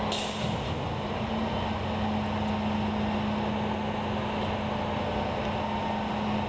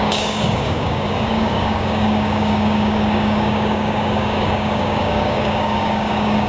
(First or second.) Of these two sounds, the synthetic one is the second